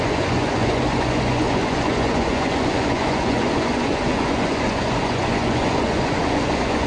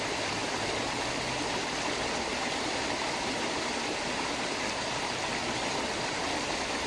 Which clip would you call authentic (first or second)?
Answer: second